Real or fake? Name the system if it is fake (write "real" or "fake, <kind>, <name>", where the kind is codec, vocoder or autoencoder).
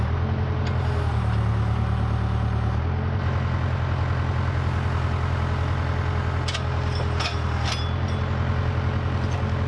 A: real